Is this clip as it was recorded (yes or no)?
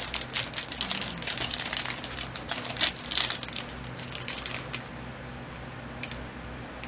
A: yes